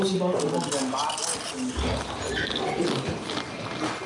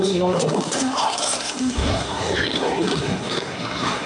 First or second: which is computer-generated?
second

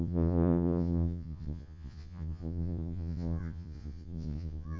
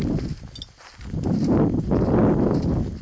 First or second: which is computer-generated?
first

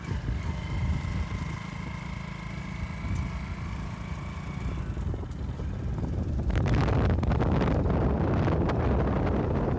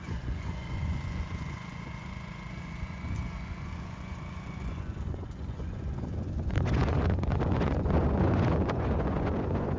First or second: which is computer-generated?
second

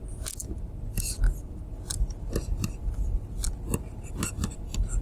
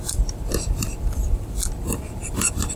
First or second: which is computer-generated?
second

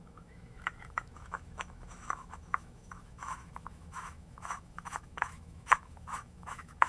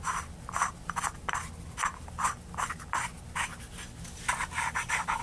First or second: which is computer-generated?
first